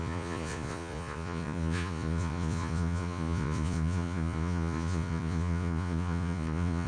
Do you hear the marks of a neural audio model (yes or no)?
yes